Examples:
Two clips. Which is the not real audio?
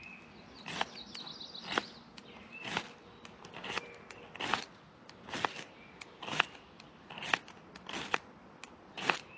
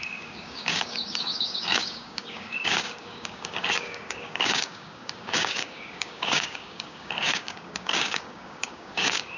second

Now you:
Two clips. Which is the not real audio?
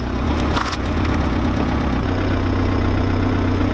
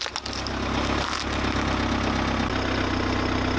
first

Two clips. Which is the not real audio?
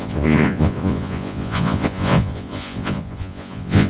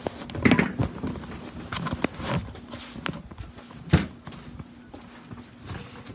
first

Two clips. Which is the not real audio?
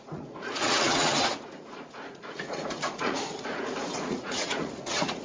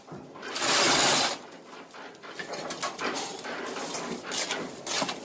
first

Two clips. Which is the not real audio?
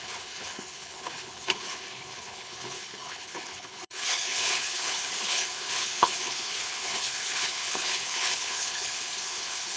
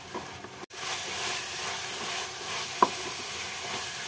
first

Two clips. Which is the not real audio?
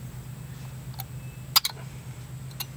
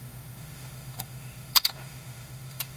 second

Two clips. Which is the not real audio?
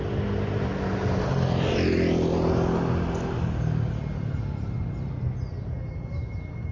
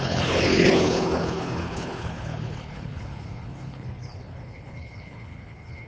second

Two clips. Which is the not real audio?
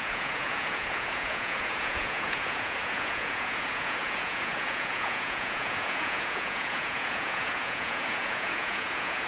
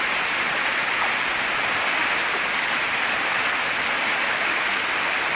first